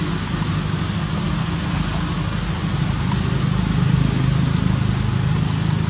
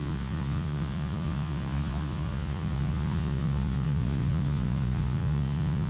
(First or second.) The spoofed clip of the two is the second